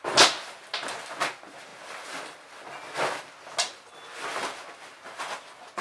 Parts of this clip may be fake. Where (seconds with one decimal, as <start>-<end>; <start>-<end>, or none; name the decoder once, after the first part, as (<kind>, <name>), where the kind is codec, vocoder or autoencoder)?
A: none